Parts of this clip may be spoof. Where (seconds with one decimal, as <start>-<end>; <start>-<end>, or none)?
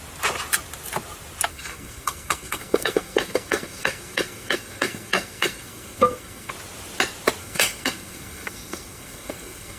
1.5-6.5; 7.4-9.8